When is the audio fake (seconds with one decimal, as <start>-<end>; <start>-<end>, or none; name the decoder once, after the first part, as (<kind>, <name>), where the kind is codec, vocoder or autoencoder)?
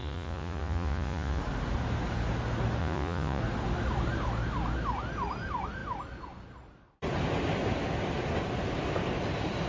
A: 0.0-1.4 (vocoder, Vocos); 2.8-3.4